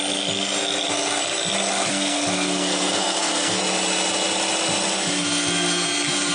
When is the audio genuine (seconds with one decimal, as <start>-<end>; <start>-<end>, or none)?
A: 0.0-1.9; 3.6-6.3